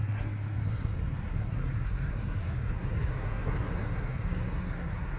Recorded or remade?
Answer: remade